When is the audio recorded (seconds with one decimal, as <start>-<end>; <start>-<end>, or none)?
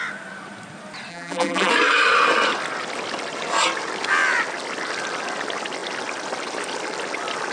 0.0-1.1; 1.7-7.5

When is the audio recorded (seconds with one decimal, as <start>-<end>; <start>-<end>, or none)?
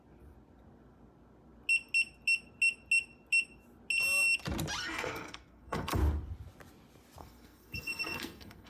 0.0-4.8; 6.0-7.2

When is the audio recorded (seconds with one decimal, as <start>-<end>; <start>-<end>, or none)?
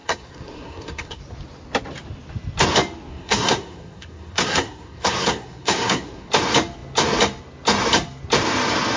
1.2-3.1; 6.3-9.0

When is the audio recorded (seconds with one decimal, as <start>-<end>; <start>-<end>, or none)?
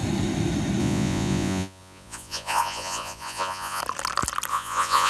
0.0-0.8; 3.8-4.5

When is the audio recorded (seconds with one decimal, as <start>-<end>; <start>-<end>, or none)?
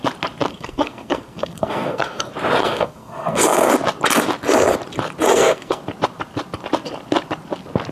0.0-0.5; 2.2-2.6; 3.7-5.3; 5.8-7.9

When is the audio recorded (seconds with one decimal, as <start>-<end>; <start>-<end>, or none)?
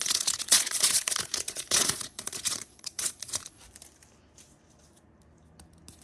3.6-6.0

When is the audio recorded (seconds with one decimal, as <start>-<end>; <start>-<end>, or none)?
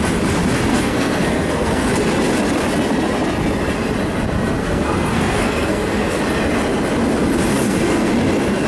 0.0-0.7; 1.9-4.6; 6.2-7.5; 8.1-8.7